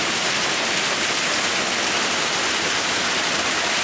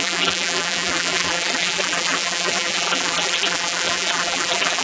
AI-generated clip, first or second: second